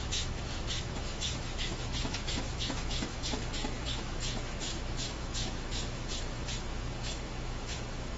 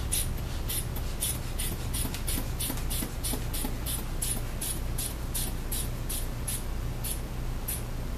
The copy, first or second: first